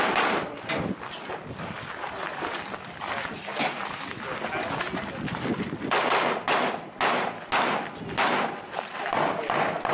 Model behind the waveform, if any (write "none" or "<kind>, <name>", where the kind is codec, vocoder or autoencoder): none